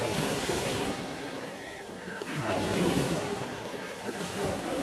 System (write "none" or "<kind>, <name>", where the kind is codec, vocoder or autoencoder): codec, SNAC